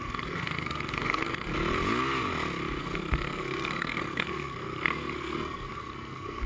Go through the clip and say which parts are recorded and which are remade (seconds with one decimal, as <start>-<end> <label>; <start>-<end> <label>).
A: 0.0-1.5 remade; 1.5-2.8 recorded; 2.8-6.5 remade